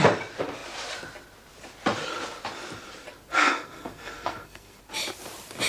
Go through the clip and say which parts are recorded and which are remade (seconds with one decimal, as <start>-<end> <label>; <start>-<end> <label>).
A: 0.0-3.3 recorded; 3.3-4.8 remade; 4.8-5.7 recorded

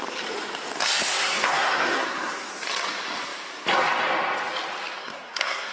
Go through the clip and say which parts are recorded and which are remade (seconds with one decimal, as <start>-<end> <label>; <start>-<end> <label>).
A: 0.0-1.1 recorded; 1.1-2.5 remade; 2.5-5.0 recorded; 5.0-5.7 remade

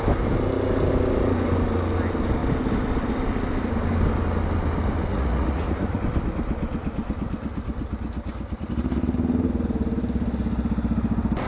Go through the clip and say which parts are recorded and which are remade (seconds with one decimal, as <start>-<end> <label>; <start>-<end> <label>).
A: 0.0-5.1 recorded; 5.1-6.0 remade; 6.0-11.5 recorded

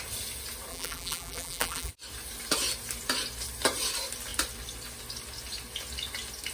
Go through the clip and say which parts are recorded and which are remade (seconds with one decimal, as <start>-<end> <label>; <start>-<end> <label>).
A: 0.0-0.7 recorded; 0.7-1.9 remade; 1.9-6.5 recorded

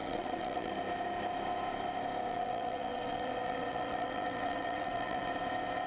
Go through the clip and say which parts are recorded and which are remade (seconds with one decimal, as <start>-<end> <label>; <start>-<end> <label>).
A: 0.0-0.7 remade; 0.7-2.3 recorded; 2.3-5.3 remade; 5.3-5.9 recorded

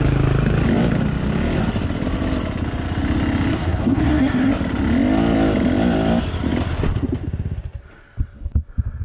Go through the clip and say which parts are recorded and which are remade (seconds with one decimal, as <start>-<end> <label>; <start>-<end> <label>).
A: 0.0-3.5 recorded; 3.5-4.5 remade; 4.5-9.0 recorded

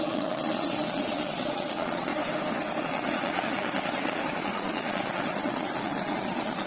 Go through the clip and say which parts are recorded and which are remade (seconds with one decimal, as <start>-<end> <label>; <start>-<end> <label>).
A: 0.0-2.1 remade; 2.1-2.8 recorded; 2.8-6.7 remade